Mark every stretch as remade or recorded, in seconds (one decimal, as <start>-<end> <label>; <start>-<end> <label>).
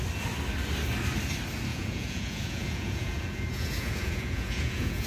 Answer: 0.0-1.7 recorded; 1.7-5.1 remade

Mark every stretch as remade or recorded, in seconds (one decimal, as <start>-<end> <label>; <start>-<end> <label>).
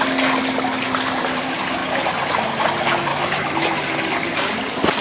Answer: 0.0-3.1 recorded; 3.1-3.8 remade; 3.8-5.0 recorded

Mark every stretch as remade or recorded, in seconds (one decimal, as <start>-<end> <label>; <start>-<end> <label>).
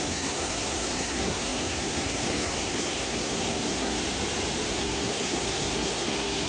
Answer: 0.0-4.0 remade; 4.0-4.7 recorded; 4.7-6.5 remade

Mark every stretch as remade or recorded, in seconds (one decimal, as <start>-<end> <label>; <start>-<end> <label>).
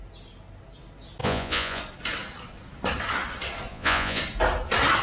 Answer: 0.0-1.2 recorded; 1.2-1.8 remade; 1.8-3.7 recorded; 3.7-4.2 remade; 4.2-5.0 recorded